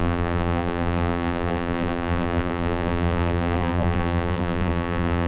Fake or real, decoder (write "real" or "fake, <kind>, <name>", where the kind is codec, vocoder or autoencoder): fake, vocoder, BigVGAN v2